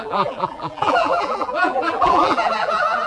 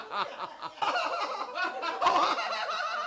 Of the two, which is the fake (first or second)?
first